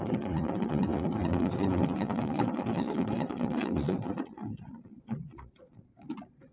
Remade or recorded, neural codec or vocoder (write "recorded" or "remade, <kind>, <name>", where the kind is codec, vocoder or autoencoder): remade, vocoder, Vocos